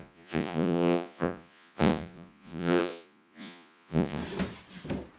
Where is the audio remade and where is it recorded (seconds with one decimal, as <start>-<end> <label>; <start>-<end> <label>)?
0.0-4.2 remade; 4.2-5.2 recorded